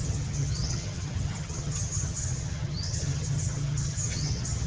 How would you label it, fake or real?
fake